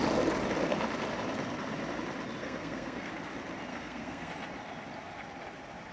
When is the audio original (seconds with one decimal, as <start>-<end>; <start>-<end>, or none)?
0.0-2.4; 3.1-3.7; 4.3-5.9